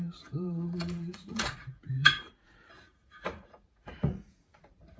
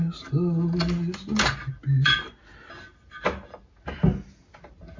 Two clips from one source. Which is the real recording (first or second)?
second